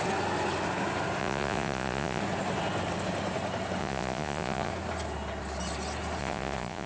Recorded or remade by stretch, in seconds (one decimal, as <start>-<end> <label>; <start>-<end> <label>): 0.0-1.2 recorded; 1.2-2.2 remade; 2.2-3.8 recorded; 3.8-4.7 remade; 4.7-6.2 recorded; 6.2-6.9 remade